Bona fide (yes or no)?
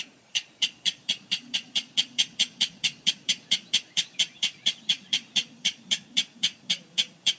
no